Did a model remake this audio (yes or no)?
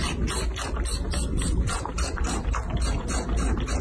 no